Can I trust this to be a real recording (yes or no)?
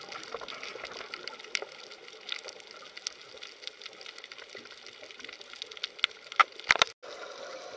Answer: yes